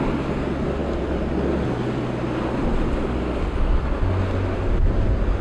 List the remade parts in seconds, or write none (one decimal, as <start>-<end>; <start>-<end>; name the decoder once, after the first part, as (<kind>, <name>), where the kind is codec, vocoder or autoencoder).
none